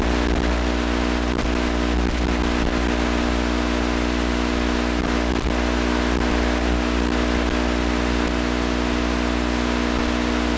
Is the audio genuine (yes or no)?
yes